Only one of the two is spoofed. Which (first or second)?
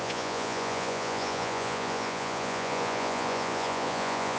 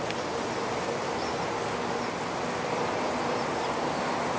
first